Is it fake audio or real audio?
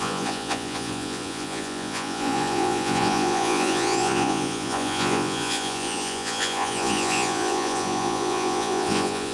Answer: fake